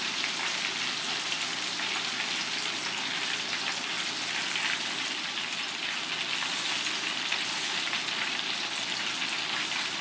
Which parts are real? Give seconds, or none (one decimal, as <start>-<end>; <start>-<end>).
0.0-10.0